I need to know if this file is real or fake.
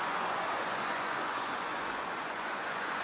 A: fake